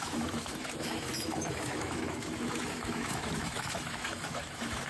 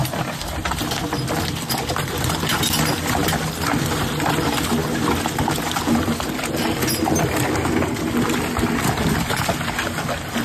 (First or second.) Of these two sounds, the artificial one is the first